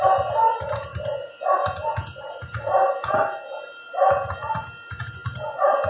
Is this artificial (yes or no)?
no